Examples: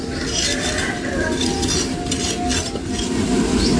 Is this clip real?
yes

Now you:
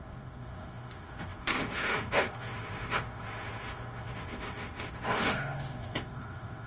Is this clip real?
no